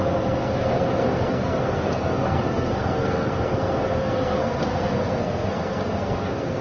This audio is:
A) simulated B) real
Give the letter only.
A